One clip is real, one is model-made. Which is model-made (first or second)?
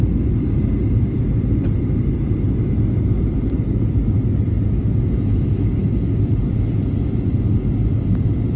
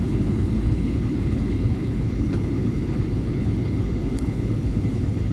second